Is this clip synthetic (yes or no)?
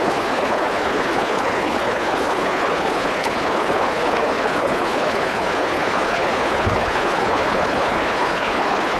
yes